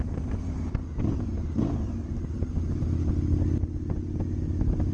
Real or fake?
real